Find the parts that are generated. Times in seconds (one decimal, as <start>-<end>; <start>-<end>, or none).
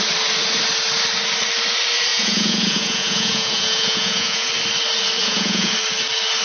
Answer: 2.1-4.5; 5.2-5.7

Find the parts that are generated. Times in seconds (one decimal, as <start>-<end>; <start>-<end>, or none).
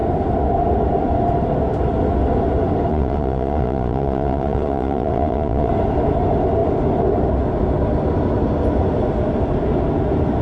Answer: 2.9-5.7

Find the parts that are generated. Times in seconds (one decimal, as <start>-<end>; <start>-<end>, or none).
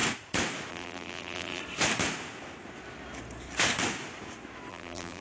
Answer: 0.7-1.6; 4.7-5.2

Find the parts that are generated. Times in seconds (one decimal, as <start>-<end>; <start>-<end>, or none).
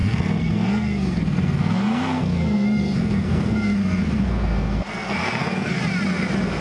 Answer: 0.0-5.8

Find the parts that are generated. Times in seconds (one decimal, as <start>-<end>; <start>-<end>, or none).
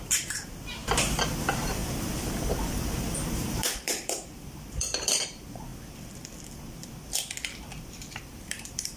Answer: 0.0-0.8; 1.4-1.8; 3.3-5.7; 7.8-9.0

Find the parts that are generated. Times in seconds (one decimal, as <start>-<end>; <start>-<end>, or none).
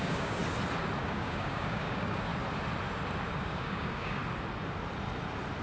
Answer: 0.0-0.4; 1.0-2.3; 3.4-4.2